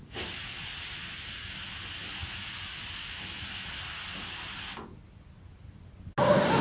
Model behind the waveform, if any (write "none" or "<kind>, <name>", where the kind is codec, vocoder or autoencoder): none